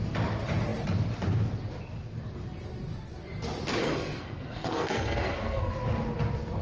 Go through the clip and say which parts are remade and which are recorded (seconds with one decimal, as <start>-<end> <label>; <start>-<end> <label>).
0.0-3.8 recorded; 3.8-5.7 remade; 5.7-6.6 recorded